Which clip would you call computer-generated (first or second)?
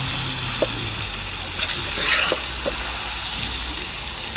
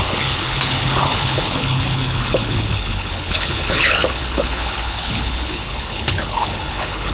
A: second